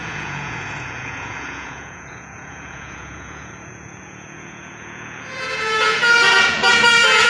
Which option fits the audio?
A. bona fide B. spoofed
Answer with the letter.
B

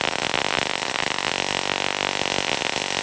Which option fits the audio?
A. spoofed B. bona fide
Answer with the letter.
B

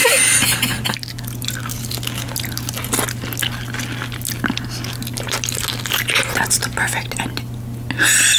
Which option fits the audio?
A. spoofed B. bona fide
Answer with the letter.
B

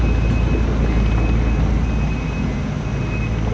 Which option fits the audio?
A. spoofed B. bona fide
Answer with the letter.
B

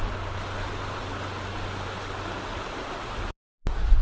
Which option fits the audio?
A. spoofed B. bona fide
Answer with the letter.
B